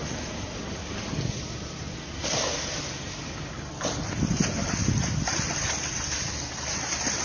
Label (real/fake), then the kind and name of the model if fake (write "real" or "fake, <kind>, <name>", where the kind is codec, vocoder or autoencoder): real